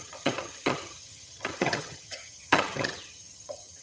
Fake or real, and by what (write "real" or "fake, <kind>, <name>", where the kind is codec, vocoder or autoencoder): fake, vocoder, HiFi-GAN